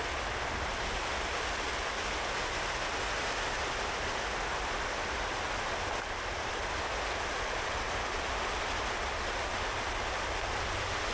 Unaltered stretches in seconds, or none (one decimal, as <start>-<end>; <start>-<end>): 0.0-11.1